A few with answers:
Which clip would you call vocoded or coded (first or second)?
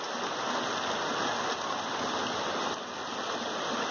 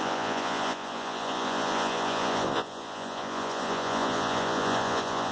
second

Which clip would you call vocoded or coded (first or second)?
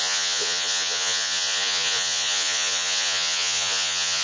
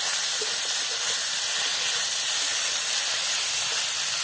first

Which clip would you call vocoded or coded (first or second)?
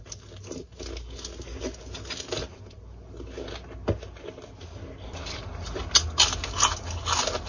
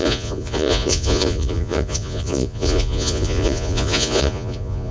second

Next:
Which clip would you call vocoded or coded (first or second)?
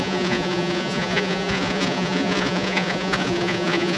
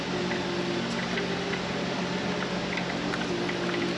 first